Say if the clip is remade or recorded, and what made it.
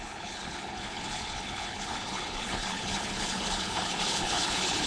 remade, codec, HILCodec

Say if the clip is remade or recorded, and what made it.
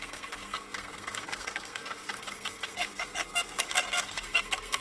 remade, codec, SNAC